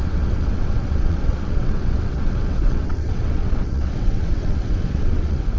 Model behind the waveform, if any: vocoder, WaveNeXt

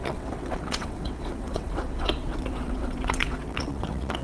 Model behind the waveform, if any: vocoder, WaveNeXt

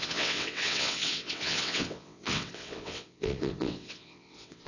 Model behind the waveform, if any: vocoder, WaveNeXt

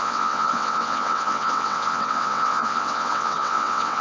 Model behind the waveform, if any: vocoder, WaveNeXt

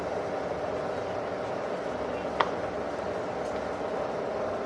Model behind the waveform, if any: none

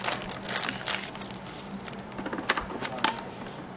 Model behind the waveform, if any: none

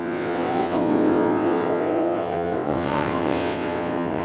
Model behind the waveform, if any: vocoder, WaveNeXt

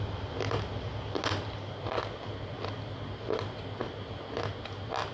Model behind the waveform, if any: none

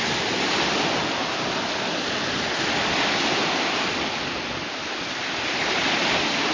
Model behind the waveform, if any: none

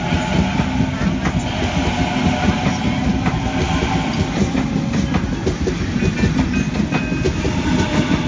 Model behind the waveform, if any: none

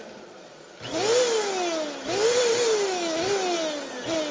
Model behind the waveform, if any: none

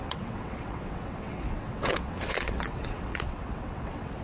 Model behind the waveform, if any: vocoder, WaveNeXt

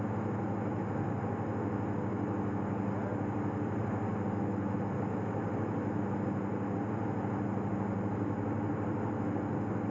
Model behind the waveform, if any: none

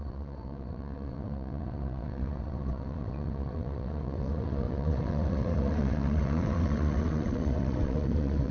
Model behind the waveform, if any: vocoder, WaveNeXt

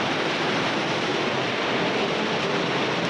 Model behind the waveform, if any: none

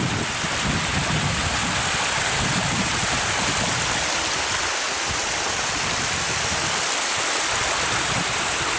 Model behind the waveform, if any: none